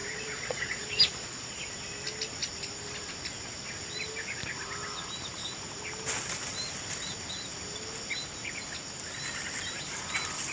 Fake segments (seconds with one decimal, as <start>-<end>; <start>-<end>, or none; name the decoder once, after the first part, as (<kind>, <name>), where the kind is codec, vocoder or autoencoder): 0.0-1.7 (vocoder, Vocos)